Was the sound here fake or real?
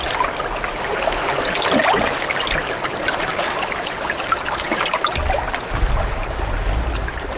real